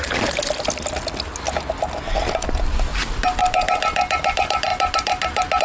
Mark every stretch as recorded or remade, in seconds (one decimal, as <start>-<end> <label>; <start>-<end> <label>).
0.0-5.6 recorded